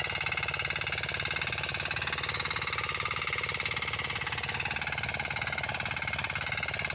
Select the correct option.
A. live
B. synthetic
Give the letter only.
A